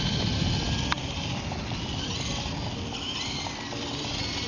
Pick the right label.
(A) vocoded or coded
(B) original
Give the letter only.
B